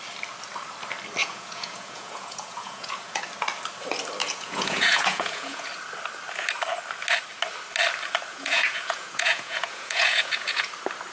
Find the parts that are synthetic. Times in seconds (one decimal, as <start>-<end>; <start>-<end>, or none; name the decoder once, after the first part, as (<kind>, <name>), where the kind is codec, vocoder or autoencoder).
1.2-3.2 (vocoder, Vocos); 4.2-5.7; 8.3-10.7